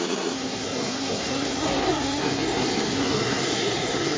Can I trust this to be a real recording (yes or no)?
no